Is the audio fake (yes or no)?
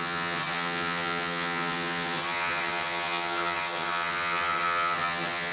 yes